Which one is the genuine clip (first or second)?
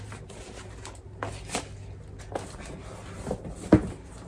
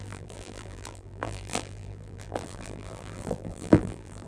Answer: first